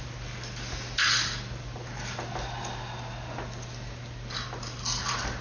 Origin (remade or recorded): recorded